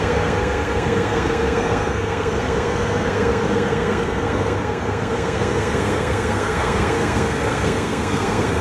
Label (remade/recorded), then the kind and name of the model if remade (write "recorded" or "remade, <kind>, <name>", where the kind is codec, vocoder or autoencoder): remade, codec, SNAC